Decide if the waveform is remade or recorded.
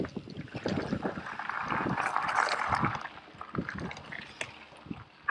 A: recorded